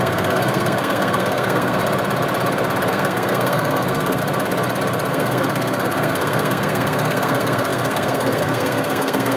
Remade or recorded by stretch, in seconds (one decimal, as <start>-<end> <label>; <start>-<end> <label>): 0.0-1.8 remade; 1.8-2.9 recorded; 2.9-4.2 remade; 4.2-5.1 recorded; 5.1-9.4 remade